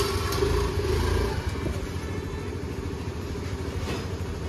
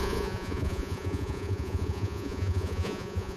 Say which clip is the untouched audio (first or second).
first